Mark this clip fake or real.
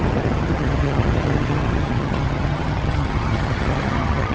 fake